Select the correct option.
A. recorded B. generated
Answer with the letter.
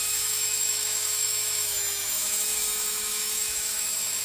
B